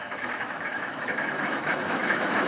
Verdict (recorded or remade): remade